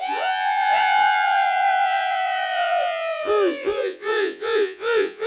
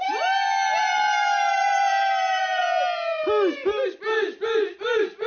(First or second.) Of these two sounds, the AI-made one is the first